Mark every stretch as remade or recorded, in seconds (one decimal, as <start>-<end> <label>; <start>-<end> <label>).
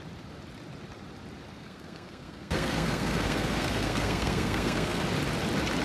0.0-1.5 recorded; 1.5-5.0 remade; 5.0-5.8 recorded